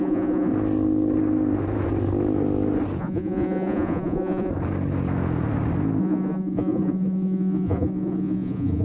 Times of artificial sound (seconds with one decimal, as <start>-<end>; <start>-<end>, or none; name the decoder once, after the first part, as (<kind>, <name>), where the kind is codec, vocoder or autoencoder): 0.0-0.5 (vocoder, Vocos); 3.0-4.5; 6.0-8.8